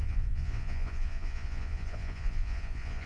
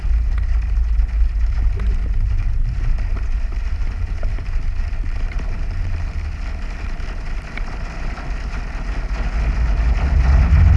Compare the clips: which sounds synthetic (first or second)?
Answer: first